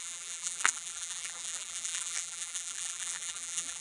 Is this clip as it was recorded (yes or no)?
no